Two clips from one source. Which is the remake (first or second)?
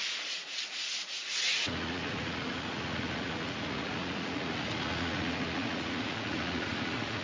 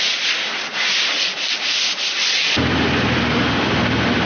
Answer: first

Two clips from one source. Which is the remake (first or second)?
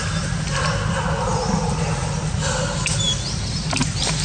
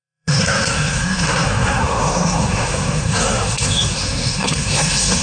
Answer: second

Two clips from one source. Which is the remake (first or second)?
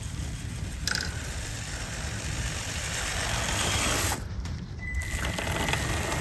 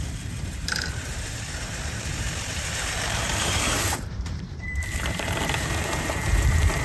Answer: second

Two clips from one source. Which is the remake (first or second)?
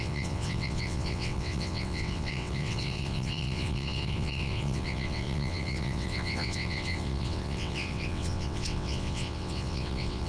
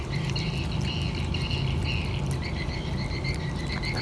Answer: first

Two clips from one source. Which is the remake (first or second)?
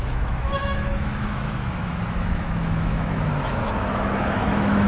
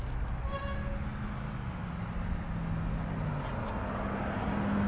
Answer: first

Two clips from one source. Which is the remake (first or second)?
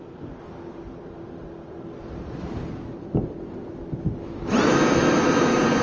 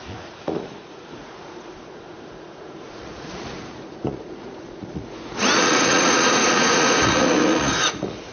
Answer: second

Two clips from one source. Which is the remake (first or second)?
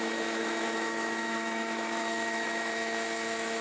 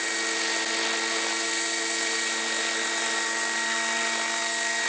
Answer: first